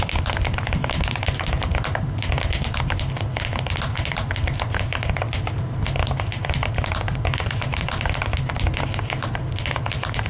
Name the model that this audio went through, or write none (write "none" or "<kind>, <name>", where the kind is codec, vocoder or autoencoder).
none